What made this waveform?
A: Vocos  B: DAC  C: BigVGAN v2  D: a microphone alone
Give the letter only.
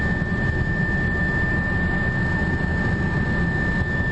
D